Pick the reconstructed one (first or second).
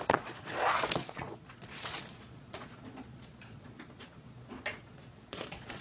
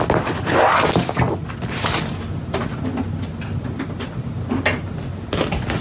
first